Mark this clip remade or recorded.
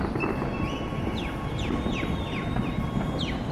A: recorded